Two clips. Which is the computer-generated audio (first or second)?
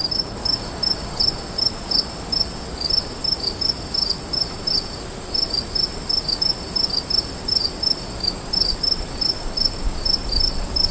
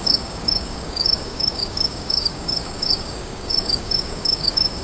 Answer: second